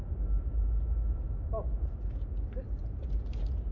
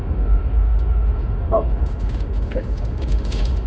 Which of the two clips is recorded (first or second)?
first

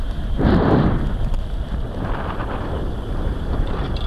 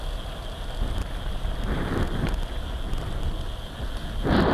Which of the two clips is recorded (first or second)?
second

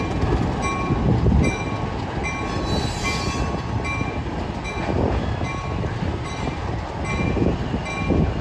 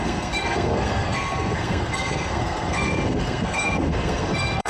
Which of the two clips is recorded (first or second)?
first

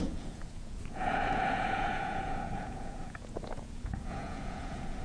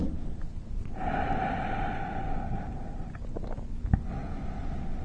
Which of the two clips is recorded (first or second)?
second